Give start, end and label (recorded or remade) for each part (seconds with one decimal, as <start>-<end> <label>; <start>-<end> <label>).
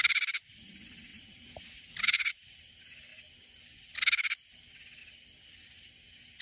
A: 0.0-1.1 recorded; 1.1-2.3 remade; 2.3-6.4 recorded